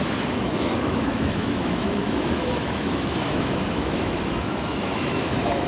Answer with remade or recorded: remade